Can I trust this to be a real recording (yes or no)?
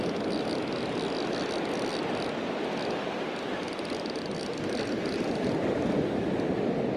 yes